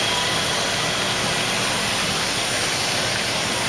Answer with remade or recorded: recorded